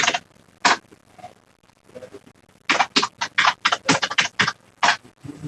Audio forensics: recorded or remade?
recorded